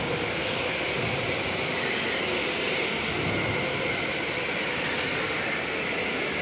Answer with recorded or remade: recorded